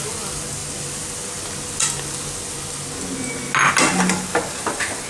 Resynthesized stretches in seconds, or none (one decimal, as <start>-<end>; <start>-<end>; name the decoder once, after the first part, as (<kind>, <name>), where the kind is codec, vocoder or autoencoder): none